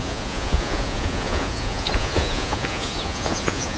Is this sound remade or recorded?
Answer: remade